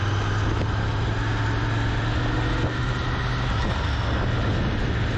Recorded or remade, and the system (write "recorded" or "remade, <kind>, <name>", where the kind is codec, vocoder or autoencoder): recorded